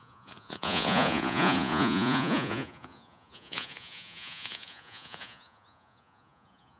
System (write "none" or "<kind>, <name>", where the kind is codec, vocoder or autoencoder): vocoder, Vocos